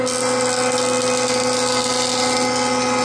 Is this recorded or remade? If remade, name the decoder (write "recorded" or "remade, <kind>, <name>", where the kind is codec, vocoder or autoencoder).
recorded